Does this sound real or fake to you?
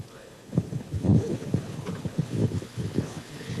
fake